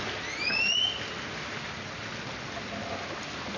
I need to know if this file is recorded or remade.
recorded